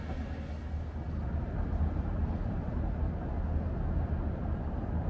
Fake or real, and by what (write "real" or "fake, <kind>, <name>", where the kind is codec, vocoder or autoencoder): real